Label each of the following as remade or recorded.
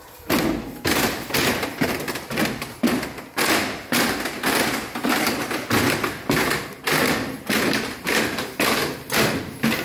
recorded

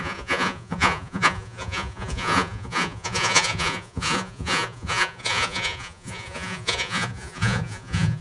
remade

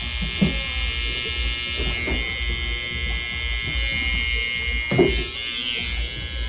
recorded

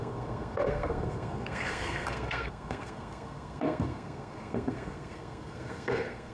remade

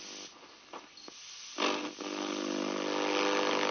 recorded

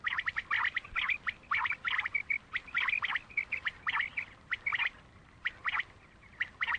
recorded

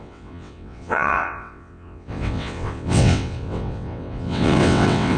remade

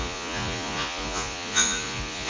remade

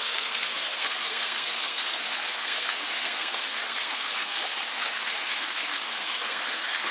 remade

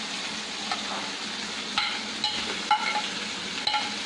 recorded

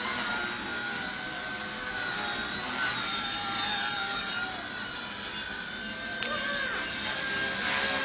recorded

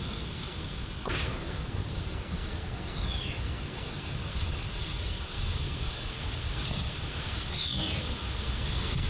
remade